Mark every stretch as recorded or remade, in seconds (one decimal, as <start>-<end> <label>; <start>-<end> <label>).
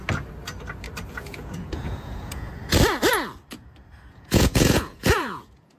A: 0.0-1.1 recorded; 1.1-2.5 remade; 2.5-4.1 recorded; 4.1-5.8 remade